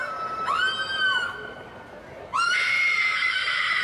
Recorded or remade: recorded